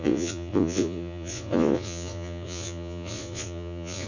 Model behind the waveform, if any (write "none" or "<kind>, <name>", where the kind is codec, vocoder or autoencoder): vocoder, Vocos